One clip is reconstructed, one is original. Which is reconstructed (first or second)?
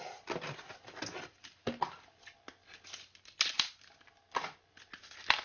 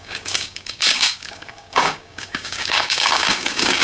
second